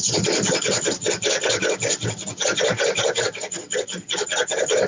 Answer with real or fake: real